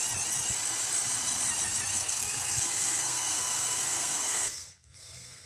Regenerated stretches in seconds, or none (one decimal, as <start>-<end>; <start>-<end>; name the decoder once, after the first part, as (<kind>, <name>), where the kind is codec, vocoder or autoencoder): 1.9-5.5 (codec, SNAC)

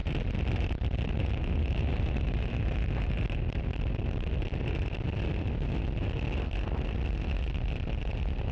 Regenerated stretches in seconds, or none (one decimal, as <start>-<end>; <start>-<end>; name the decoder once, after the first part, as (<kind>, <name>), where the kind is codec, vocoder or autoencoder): none

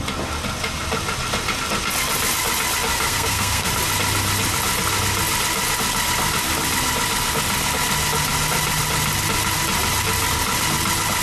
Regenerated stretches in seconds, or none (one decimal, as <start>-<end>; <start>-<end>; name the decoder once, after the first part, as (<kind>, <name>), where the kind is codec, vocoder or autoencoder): 2.9-3.7 (codec, SNAC)

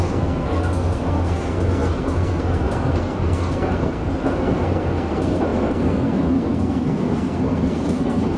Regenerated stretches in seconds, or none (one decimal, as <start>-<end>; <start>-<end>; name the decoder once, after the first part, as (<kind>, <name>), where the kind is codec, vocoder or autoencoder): 0.0-8.4 (codec, SNAC)

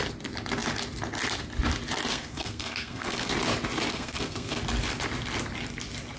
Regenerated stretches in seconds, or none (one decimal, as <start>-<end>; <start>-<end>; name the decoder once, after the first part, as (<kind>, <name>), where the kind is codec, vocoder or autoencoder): 2.1-3.3 (codec, SNAC); 3.9-4.6

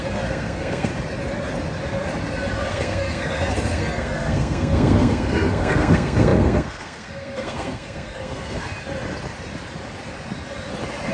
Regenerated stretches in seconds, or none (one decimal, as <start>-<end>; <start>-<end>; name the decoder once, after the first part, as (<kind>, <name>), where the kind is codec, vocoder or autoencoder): 0.0-0.9 (codec, SNAC); 2.7-8.7

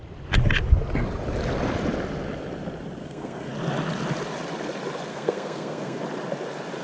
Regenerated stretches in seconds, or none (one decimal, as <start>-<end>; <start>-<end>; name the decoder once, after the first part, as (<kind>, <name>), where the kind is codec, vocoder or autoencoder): 3.0-3.5 (codec, SNAC); 5.1-6.0

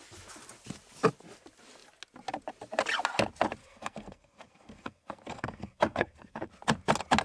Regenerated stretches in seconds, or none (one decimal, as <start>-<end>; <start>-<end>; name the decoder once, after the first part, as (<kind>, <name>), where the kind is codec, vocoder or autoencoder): 3.6-6.5 (codec, SNAC)